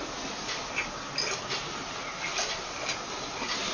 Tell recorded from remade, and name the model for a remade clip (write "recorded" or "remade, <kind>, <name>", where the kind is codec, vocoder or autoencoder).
recorded